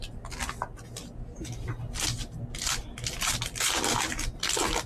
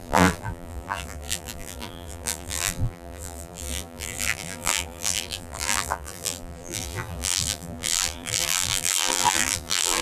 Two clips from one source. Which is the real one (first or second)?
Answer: first